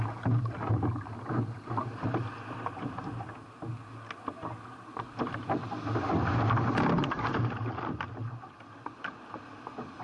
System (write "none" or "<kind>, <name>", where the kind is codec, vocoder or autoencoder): none